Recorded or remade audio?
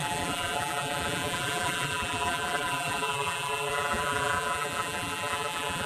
remade